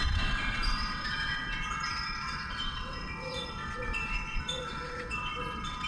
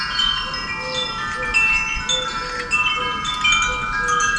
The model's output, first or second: first